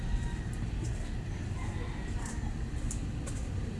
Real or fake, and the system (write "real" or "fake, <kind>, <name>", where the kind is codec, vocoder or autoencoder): real